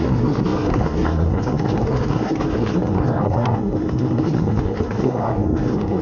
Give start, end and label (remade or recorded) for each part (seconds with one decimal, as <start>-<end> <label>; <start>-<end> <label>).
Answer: 0.0-6.0 remade